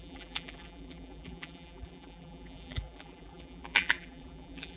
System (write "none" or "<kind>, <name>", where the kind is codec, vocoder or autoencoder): vocoder, BigVGAN v2